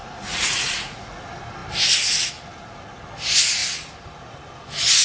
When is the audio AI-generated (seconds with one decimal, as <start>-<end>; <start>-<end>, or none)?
0.0-1.2